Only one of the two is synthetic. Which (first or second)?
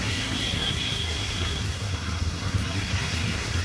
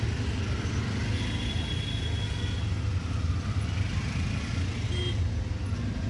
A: first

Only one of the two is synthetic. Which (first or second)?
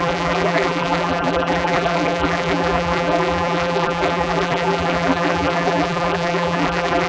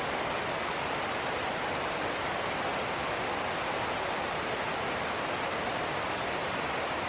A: first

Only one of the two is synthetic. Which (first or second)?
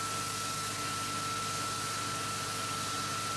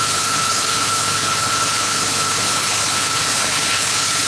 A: second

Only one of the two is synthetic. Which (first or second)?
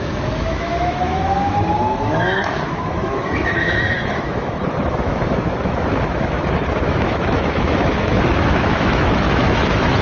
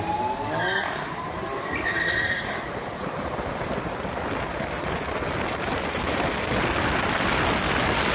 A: first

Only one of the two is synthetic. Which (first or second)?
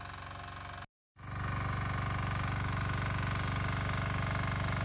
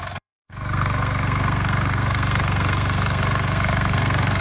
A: second